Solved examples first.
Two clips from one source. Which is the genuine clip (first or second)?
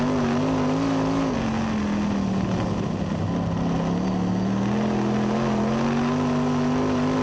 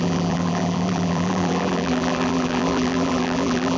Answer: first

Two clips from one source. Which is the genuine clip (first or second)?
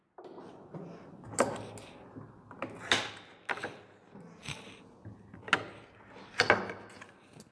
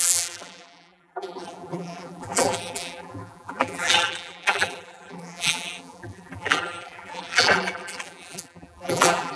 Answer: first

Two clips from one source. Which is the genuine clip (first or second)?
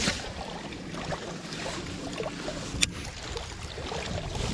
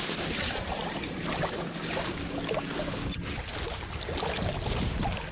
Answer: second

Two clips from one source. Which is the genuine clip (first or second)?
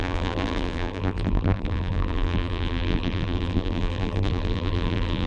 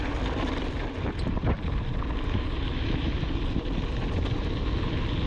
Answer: second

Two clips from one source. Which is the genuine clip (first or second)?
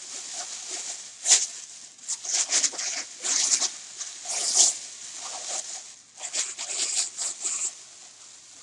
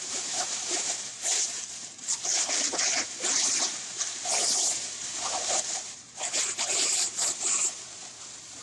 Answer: first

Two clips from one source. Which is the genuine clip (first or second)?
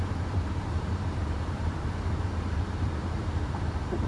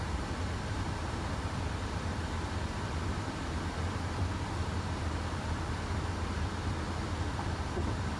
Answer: second